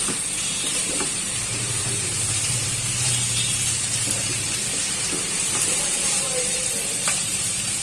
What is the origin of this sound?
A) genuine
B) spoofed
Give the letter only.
B